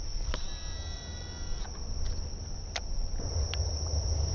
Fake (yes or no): no